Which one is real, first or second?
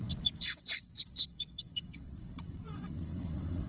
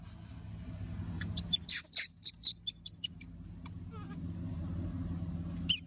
second